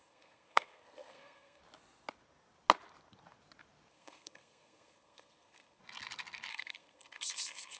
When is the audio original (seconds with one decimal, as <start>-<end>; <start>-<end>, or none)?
1.6-3.9; 5.8-6.5

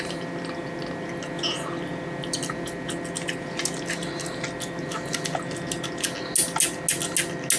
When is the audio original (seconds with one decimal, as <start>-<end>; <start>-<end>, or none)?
0.0-7.6